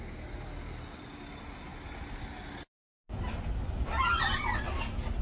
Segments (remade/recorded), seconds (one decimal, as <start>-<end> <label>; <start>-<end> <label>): 0.0-5.2 recorded